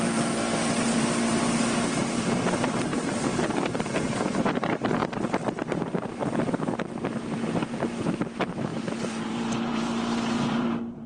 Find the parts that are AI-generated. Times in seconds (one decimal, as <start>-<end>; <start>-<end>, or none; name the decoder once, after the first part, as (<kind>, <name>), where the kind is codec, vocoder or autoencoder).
0.0-5.0 (vocoder, BigVGAN v2); 7.6-11.1